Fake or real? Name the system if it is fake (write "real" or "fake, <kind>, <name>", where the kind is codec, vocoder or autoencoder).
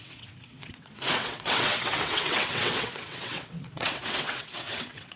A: fake, vocoder, WaveNeXt